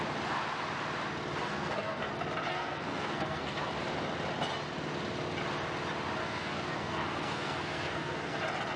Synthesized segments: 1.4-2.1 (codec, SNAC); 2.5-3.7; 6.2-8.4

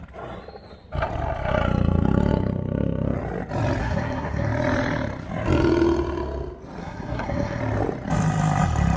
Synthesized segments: 3.8-4.5 (codec, SNAC); 6.8-7.6